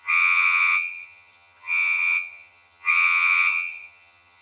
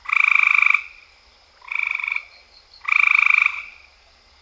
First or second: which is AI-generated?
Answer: first